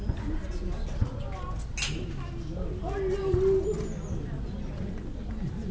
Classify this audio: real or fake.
real